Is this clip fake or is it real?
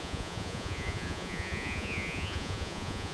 fake